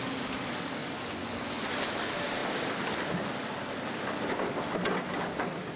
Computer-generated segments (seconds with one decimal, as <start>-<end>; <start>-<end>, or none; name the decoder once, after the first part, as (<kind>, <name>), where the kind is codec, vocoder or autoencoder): 0.8-1.7 (vocoder, Vocos)